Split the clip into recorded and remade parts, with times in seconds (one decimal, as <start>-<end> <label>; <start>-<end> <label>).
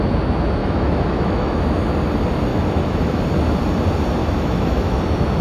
0.0-0.6 recorded; 0.6-1.6 remade; 1.6-2.5 recorded; 2.5-3.2 remade; 3.2-4.2 recorded; 4.2-5.0 remade; 5.0-5.4 recorded